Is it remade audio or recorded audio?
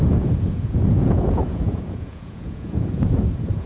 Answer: remade